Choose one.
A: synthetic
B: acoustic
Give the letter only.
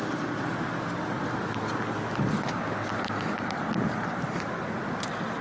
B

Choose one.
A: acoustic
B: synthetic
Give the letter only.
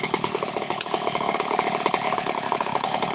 B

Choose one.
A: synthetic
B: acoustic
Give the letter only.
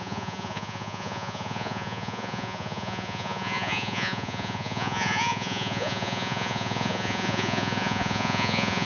A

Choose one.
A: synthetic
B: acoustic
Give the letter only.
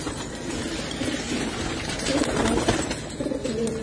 B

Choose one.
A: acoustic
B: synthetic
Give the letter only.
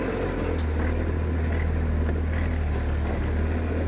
A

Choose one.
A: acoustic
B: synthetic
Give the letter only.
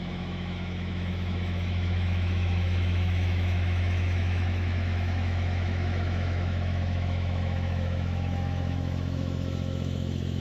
B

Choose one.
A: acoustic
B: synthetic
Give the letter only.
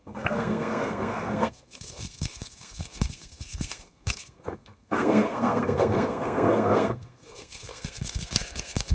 B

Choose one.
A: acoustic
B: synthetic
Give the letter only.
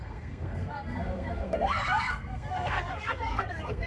B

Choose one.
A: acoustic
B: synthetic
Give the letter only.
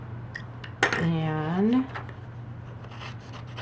A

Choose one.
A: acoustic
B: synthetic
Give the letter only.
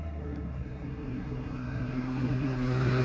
B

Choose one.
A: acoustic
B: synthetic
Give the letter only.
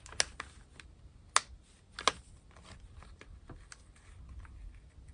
A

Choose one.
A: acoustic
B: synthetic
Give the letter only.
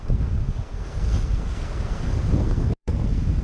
B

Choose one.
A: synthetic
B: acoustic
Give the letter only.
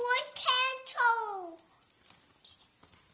B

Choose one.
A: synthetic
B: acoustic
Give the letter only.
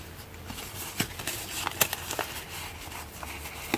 B